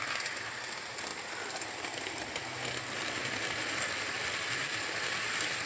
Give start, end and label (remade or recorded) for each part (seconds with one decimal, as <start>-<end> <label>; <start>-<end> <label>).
0.0-5.7 recorded